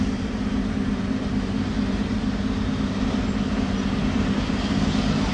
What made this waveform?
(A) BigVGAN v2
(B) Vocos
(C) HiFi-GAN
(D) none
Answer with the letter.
D